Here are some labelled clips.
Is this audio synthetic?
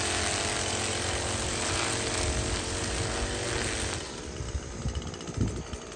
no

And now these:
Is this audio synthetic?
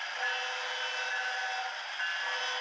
no